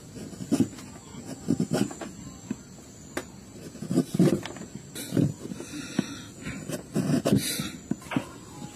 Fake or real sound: real